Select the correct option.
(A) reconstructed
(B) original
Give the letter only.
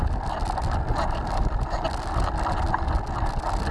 B